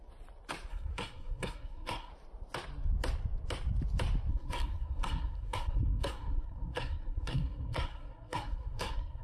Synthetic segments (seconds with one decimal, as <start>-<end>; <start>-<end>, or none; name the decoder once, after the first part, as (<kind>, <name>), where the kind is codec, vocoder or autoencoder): 0.7-2.1 (codec, SNAC); 4.3-9.2